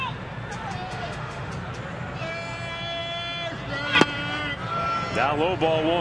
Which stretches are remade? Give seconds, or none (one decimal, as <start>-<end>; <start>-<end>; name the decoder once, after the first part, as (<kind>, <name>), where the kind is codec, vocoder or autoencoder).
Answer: 0.9-1.5 (autoencoder, DAC-VAE)